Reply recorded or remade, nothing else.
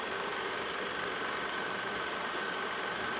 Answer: recorded